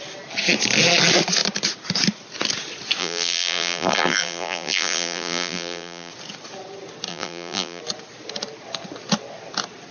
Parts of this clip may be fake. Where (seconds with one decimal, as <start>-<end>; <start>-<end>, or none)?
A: 3.0-6.1; 7.1-7.8